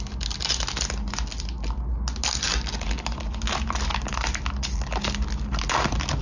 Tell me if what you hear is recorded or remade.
recorded